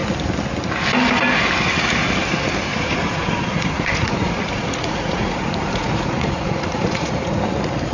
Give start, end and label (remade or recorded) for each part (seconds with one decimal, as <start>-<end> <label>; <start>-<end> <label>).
0.0-2.7 recorded; 2.7-7.4 remade; 7.4-7.9 recorded